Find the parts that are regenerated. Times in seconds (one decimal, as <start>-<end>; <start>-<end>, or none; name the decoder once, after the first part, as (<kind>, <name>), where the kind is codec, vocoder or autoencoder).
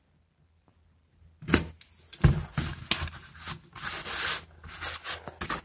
none